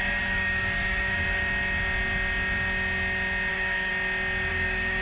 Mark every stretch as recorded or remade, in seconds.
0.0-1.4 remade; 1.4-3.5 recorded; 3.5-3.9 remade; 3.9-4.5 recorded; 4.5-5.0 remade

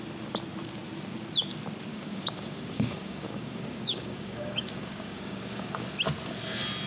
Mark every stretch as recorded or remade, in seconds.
0.0-1.9 recorded; 1.9-5.9 remade; 5.9-6.9 recorded